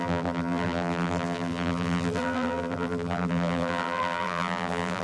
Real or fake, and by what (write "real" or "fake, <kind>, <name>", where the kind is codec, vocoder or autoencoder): fake, vocoder, BigVGAN v2